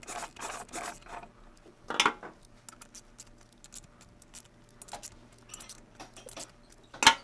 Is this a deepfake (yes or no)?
no